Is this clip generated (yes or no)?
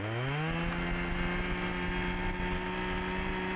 no